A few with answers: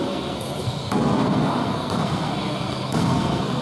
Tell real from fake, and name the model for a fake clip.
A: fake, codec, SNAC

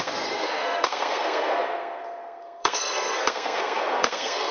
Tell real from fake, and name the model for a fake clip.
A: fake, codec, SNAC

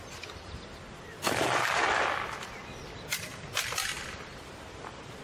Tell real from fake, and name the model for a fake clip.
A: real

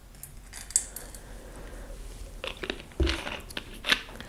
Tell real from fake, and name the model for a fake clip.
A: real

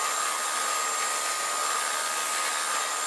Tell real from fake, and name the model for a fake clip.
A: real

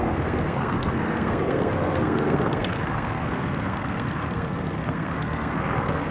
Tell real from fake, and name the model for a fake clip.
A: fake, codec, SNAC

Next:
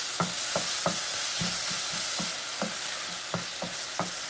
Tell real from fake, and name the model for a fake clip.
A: real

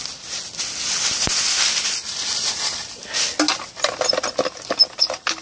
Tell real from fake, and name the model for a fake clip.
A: real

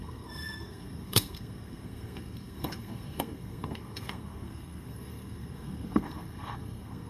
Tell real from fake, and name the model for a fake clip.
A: fake, codec, SNAC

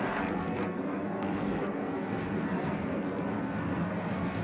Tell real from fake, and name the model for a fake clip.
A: fake, codec, SNAC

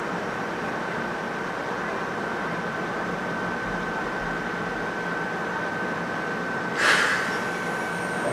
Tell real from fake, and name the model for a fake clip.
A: real